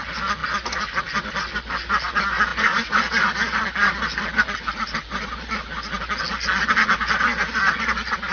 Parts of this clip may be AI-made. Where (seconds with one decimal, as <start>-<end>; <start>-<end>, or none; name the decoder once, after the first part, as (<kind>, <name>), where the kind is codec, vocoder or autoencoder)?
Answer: none